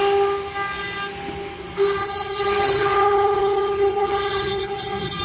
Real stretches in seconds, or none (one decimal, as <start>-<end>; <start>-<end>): 0.0-2.0